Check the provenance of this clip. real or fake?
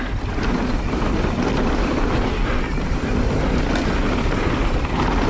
real